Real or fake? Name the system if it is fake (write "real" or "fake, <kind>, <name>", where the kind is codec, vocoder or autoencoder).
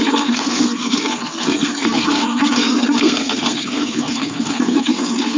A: fake, codec, SNAC